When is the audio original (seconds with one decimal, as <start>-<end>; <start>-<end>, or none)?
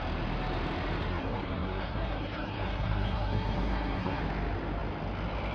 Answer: 0.0-1.1; 4.2-5.5